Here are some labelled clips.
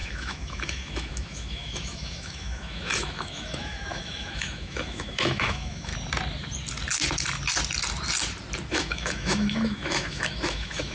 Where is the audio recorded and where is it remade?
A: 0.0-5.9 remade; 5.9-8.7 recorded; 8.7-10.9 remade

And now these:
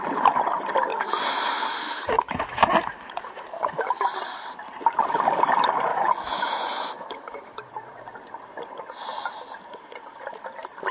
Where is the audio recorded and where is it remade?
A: 0.0-0.9 recorded; 0.9-4.1 remade; 4.1-5.9 recorded; 5.9-7.7 remade; 7.7-10.9 recorded

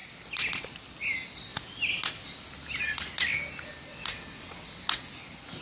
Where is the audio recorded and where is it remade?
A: 0.0-3.9 recorded; 3.9-5.1 remade; 5.1-5.6 recorded

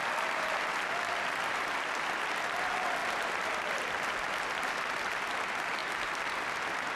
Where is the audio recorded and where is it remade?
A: 0.0-7.0 recorded

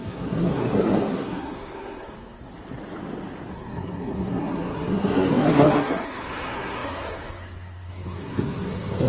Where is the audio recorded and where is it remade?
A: 0.0-2.5 remade; 2.5-3.5 recorded; 3.5-9.1 remade